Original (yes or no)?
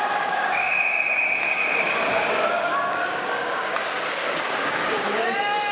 no